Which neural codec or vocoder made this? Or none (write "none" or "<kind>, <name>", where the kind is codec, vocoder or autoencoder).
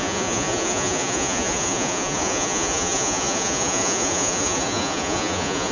vocoder, Vocos